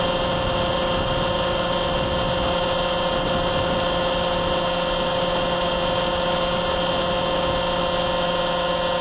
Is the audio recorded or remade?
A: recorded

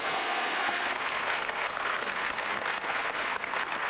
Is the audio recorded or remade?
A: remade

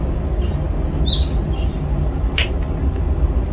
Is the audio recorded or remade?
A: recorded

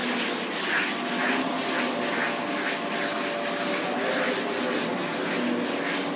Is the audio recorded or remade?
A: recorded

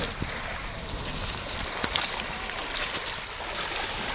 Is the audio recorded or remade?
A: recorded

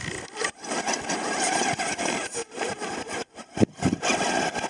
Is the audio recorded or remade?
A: recorded